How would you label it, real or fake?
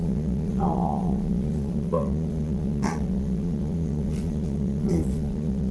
fake